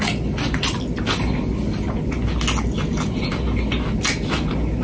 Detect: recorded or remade recorded